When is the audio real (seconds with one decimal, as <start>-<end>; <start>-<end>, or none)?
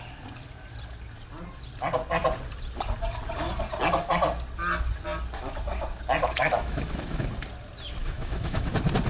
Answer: 0.0-6.2; 7.3-8.0; 8.7-9.1